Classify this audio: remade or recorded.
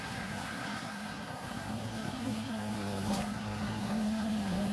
remade